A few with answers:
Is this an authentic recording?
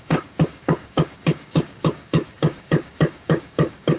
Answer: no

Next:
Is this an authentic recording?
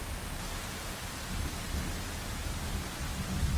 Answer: yes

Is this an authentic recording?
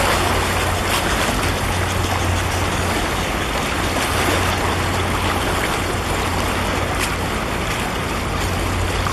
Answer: yes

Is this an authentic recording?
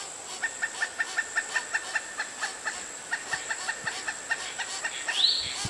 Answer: yes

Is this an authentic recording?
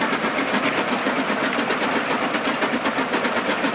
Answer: yes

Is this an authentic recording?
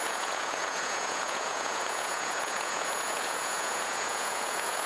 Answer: no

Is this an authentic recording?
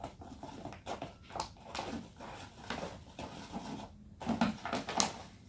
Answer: yes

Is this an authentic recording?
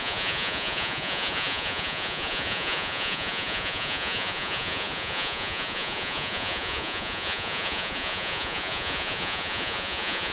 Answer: no